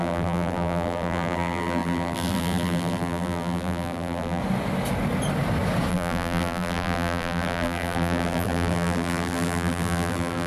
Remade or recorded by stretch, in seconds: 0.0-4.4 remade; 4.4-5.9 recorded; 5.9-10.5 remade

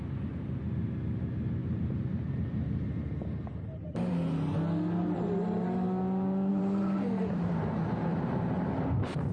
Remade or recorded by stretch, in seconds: 0.0-1.6 recorded; 1.6-4.1 remade; 4.1-5.0 recorded; 5.0-5.9 remade; 5.9-6.5 recorded; 6.5-7.6 remade; 7.6-8.1 recorded; 8.1-9.3 remade

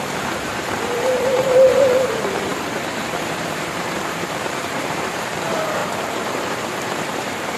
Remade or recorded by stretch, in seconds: 0.0-7.6 remade

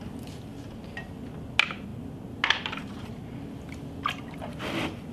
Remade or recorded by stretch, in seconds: 0.0-5.1 recorded

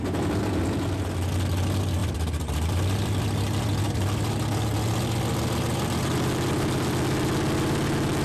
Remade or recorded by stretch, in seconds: 0.0-2.0 recorded; 2.0-4.4 remade; 4.4-8.2 recorded